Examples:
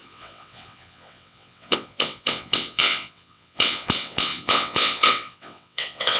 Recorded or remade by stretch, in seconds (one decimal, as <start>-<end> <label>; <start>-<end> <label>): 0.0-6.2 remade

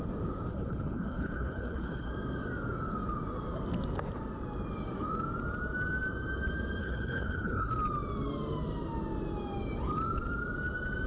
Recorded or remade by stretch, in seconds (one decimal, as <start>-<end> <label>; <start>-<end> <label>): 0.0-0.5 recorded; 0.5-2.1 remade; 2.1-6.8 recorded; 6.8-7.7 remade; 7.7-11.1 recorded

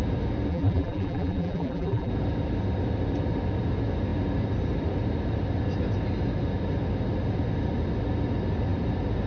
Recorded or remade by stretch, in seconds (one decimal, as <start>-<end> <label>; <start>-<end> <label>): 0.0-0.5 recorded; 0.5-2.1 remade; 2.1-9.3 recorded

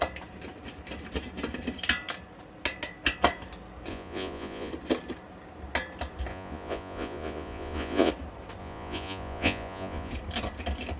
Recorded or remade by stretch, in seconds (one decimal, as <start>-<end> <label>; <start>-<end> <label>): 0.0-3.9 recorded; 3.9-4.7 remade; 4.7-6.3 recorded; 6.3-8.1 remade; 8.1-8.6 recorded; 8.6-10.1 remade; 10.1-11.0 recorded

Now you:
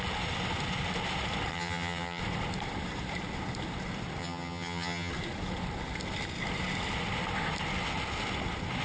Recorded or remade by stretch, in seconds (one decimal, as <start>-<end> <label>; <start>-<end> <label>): 0.0-1.5 recorded; 1.5-2.2 remade; 2.2-4.2 recorded; 4.2-5.1 remade; 5.1-8.8 recorded

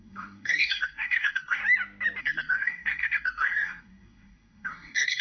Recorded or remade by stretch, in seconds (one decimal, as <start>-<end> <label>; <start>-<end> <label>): 0.0-1.6 remade; 1.6-2.2 recorded; 2.2-5.2 remade